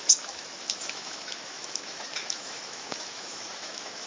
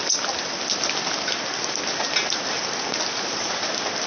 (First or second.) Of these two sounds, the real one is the second